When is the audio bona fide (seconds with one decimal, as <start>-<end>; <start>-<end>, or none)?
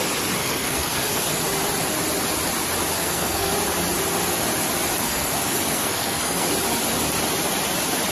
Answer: 0.0-0.4; 1.4-3.0; 3.5-5.0; 6.5-8.1